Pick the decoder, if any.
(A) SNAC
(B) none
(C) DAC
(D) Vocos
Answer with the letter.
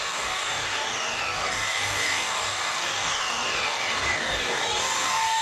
C